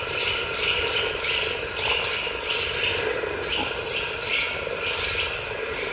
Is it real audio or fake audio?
real